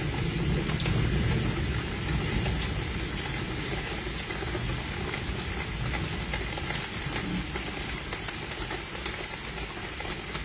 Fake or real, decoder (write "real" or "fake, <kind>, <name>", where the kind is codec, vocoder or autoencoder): real